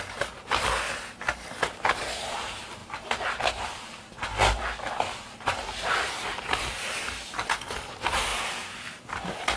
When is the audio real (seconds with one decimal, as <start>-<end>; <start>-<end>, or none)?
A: 0.0-9.6